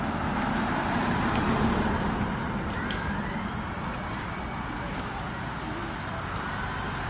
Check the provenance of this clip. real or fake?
real